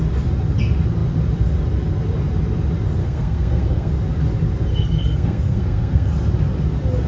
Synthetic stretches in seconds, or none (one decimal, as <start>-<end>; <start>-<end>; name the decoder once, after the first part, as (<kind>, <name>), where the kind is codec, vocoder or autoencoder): 3.0-3.9 (codec, SNAC); 4.7-6.1